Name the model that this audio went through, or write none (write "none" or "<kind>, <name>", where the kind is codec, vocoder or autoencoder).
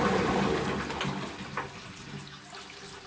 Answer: none